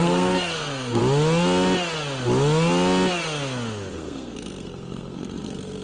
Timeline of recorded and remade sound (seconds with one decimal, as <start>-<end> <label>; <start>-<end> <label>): 0.0-1.0 remade; 1.0-3.9 recorded; 3.9-5.8 remade

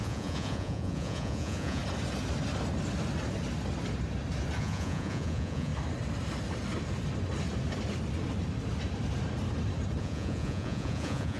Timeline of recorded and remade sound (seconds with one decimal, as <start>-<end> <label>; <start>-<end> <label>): 0.0-1.8 remade; 1.8-4.6 recorded; 4.6-5.7 remade; 5.7-10.0 recorded; 10.0-11.4 remade

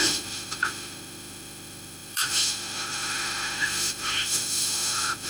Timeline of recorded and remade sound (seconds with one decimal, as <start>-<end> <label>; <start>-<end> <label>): 0.0-5.3 remade

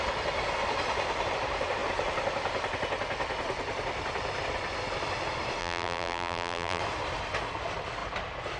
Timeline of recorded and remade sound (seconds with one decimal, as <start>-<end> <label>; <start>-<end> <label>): 0.0-5.6 recorded; 5.6-6.8 remade; 6.8-8.6 recorded